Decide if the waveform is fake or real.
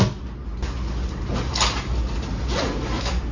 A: real